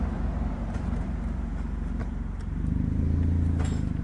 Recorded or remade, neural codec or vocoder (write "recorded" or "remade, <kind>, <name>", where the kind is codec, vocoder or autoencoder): remade, vocoder, BigVGAN v2